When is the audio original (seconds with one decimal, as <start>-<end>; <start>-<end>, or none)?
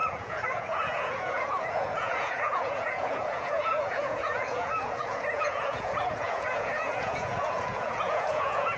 none